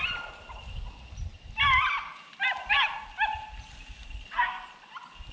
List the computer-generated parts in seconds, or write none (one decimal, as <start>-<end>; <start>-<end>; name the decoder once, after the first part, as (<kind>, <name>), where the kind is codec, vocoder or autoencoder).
none